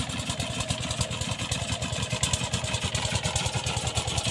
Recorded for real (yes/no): yes